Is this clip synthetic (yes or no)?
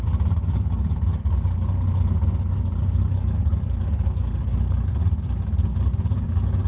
no